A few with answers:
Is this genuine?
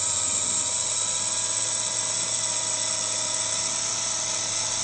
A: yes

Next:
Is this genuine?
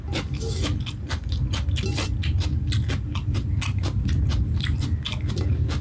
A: yes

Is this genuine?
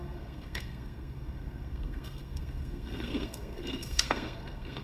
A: no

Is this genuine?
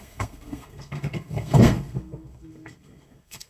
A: no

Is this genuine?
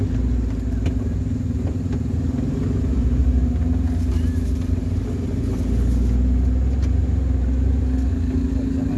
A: yes